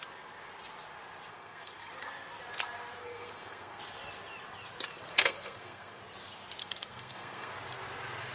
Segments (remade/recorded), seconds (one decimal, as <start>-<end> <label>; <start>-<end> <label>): 0.0-1.3 recorded; 1.3-1.9 remade; 1.9-3.0 recorded; 3.0-3.8 remade; 3.8-5.1 recorded; 5.1-6.0 remade; 6.0-6.6 recorded; 6.6-7.5 remade; 7.5-8.3 recorded